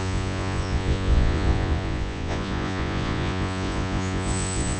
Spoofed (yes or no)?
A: yes